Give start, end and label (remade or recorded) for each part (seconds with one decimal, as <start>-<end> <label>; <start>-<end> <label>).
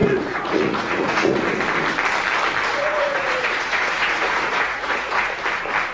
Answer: 0.0-1.4 remade; 1.4-2.7 recorded; 2.7-5.3 remade; 5.3-5.9 recorded